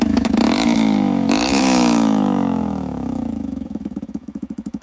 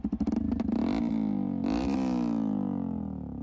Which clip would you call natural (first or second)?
second